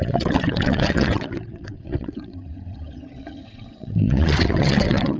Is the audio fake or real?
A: fake